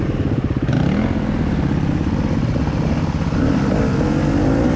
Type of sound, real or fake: real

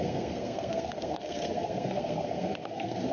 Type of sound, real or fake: fake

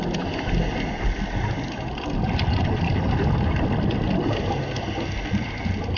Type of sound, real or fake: real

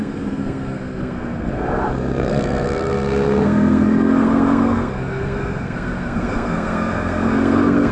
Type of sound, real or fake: fake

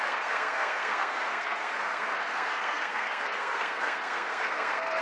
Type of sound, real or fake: fake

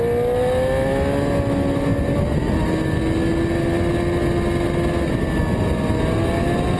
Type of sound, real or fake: real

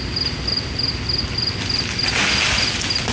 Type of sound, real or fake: real